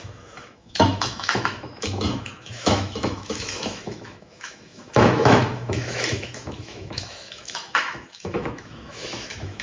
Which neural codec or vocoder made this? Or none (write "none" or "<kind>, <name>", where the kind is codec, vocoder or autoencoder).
autoencoder, DAC-VAE